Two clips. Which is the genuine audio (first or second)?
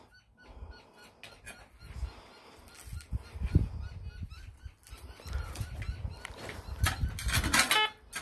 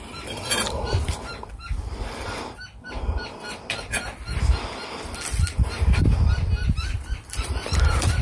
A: first